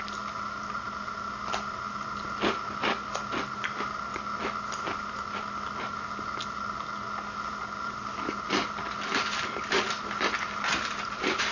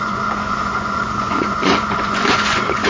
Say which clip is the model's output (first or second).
second